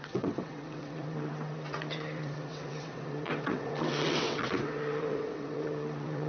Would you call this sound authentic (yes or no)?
no